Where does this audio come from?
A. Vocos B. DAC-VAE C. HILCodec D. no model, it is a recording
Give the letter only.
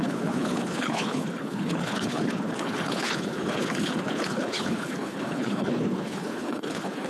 C